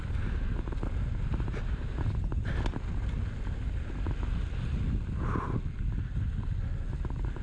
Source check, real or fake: real